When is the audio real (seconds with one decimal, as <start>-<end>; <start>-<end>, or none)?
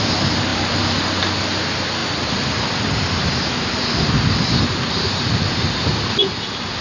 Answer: 0.0-6.8